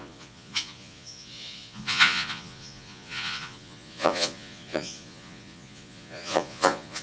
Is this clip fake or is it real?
fake